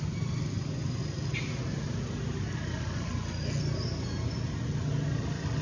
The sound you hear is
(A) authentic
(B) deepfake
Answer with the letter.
A